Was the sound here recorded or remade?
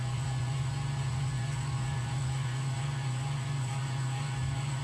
remade